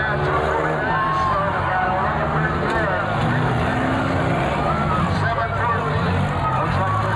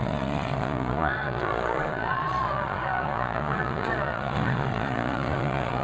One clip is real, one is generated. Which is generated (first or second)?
second